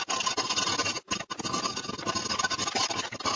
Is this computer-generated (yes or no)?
no